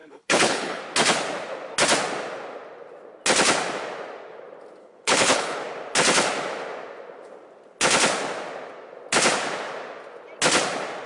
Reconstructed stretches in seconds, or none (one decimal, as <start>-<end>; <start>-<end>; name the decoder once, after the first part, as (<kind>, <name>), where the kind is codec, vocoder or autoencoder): 0.0-0.8 (codec, HILCodec); 4.8-5.6